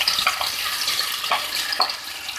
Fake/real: real